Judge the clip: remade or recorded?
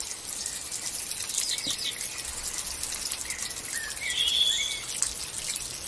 recorded